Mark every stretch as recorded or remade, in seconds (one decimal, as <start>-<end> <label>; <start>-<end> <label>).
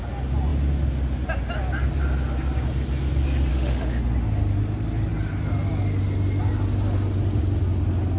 0.0-3.5 recorded; 3.5-4.0 remade; 4.0-8.2 recorded